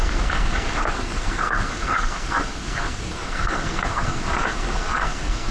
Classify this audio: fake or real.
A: fake